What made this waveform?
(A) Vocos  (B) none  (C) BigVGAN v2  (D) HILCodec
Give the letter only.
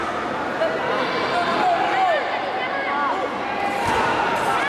B